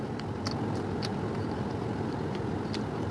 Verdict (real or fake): real